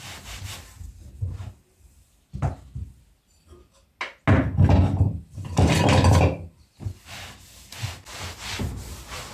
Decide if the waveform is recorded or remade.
recorded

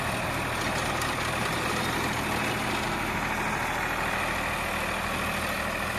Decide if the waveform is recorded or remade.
recorded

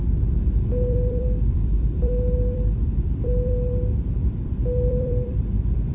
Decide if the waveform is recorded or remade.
remade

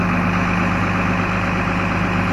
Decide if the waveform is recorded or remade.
recorded